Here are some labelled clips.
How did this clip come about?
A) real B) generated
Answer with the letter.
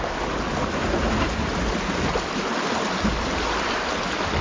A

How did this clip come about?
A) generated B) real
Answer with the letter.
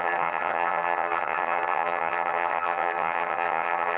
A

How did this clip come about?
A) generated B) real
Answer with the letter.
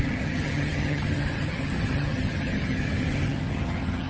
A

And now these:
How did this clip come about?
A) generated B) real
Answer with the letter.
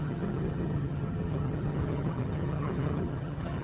A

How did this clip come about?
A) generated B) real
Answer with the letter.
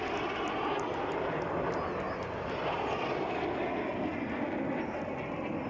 B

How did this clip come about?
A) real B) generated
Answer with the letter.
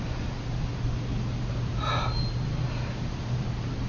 A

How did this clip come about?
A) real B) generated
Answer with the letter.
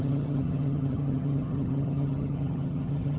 B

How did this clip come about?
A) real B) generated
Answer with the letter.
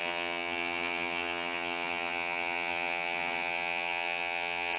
B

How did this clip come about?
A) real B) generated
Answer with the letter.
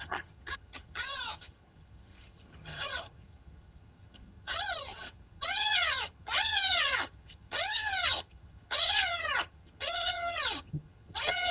B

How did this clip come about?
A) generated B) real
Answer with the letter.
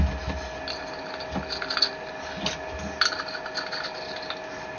B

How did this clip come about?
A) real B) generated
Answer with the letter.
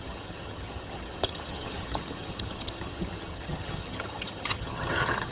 B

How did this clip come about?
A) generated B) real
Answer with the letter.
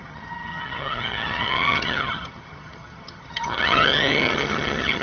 A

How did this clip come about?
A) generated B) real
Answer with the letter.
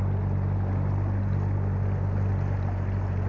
B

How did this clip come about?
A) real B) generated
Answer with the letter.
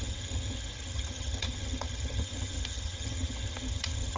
B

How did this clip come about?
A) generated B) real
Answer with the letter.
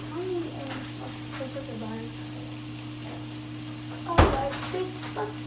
B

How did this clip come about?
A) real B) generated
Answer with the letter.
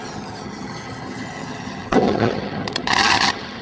B